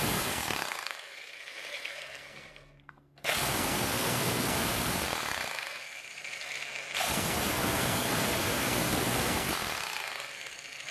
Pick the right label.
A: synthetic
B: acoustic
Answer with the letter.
A